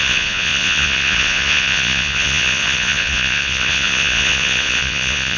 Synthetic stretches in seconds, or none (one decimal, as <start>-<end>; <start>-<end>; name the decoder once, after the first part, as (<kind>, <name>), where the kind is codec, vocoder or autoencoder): 0.0-5.4 (vocoder, Vocos)